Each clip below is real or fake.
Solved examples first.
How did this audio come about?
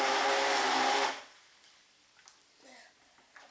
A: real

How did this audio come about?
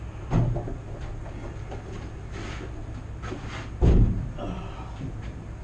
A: real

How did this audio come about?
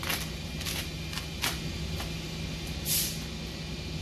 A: real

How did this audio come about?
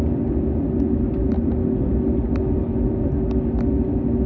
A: real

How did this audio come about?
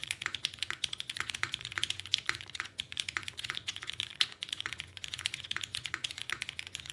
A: fake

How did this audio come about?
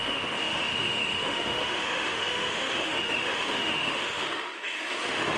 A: fake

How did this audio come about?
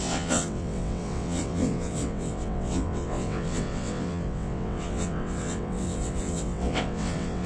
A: fake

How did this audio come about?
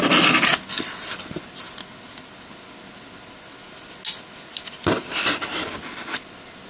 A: real